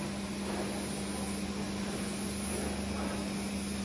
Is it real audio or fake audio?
real